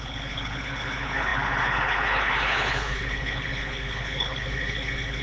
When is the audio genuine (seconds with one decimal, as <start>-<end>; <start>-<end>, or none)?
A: none